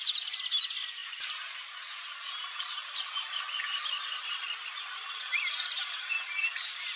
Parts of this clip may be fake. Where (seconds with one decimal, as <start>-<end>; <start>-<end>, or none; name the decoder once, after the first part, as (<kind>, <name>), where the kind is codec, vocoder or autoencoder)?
none